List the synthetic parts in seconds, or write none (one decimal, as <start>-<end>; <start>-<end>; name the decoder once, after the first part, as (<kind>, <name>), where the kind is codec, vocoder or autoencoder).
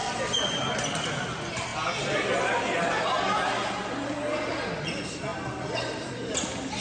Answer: 0.0-0.7 (vocoder, BigVGAN v2); 5.3-6.1